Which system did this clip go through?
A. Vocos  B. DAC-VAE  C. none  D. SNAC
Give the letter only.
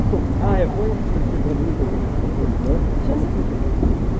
C